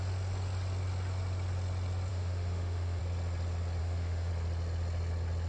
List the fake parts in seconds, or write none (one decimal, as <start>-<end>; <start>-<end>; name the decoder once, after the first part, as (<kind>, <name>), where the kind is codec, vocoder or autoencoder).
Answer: 2.1-3.0 (autoencoder, DAC-VAE); 3.8-4.3